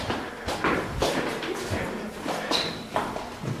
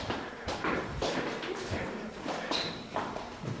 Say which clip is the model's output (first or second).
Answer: second